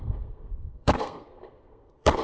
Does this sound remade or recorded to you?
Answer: remade